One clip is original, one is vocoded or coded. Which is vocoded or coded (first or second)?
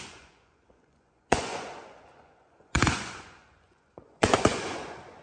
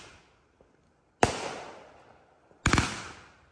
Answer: first